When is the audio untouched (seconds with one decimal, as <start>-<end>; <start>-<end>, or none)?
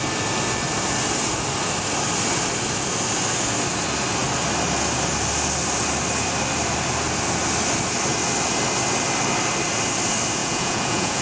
0.0-10.4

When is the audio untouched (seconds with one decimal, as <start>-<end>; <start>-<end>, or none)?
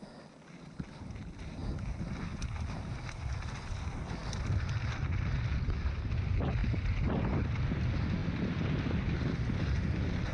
0.0-10.3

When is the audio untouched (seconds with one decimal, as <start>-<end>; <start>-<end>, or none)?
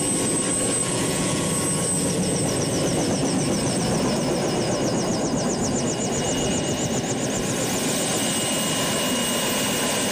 0.0-0.8; 1.5-10.1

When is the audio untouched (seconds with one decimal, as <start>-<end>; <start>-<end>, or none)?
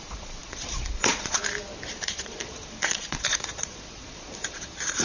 1.4-1.9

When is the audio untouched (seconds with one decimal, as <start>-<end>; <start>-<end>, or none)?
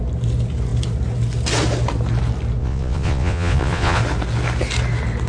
0.0-2.6; 4.0-5.3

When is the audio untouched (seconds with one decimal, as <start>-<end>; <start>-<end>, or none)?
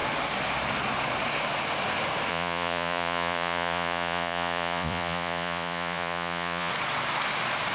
0.0-2.3; 6.7-7.7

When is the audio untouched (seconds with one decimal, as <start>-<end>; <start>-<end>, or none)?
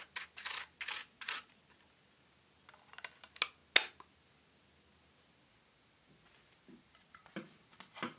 0.0-1.0; 1.6-8.2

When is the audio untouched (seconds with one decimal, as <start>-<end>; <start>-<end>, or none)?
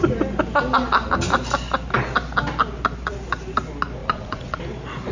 0.0-4.0; 4.6-5.1